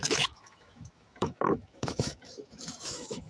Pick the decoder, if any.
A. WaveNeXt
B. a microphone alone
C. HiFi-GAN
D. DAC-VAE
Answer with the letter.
D